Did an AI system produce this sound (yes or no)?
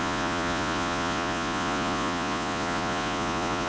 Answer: yes